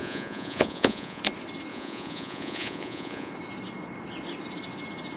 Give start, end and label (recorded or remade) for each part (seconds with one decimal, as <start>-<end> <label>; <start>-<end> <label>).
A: 0.0-1.2 remade; 1.2-1.7 recorded; 1.7-3.3 remade; 3.3-5.2 recorded